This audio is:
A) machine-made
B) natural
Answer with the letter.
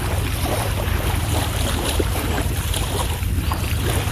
A